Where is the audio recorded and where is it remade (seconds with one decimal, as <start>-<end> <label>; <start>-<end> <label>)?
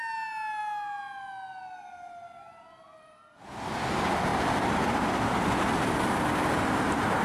0.0-7.2 recorded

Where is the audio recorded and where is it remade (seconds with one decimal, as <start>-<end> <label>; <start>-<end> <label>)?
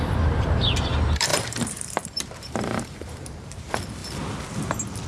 0.0-1.3 recorded; 1.3-3.6 remade; 3.6-5.1 recorded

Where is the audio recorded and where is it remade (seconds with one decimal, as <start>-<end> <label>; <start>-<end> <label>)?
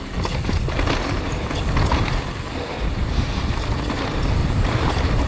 0.0-4.4 recorded; 4.4-5.3 remade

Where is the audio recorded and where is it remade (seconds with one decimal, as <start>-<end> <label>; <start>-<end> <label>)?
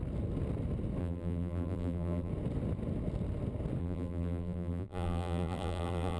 0.0-1.0 recorded; 1.0-2.3 remade; 2.3-3.8 recorded; 3.8-6.2 remade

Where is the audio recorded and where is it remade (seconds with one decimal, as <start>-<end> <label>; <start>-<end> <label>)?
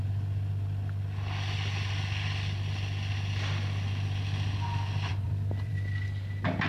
0.0-5.1 recorded; 5.1-5.7 remade; 5.7-6.7 recorded